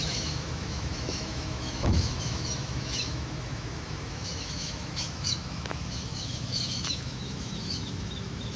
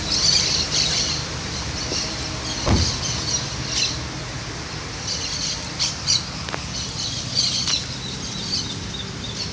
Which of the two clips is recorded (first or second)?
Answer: second